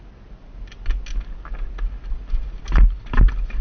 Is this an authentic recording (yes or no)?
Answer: yes